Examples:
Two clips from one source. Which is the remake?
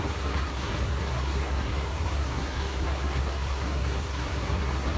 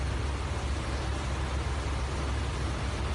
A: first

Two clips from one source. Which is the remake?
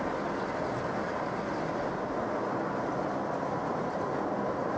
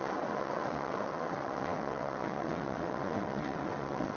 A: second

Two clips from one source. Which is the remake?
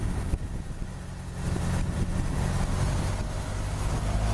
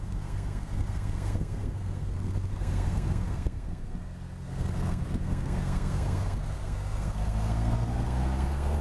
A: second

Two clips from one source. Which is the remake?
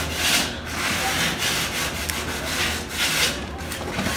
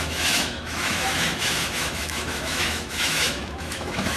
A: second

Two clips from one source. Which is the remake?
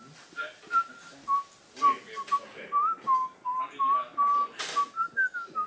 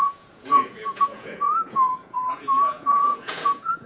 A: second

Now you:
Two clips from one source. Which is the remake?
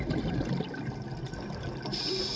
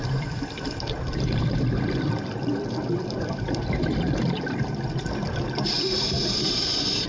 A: second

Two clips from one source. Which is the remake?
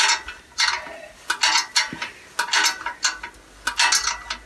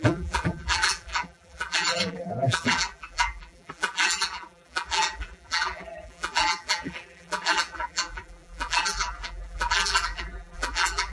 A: second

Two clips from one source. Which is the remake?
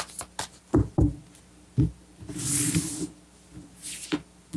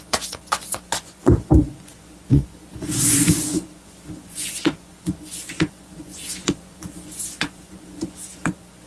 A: second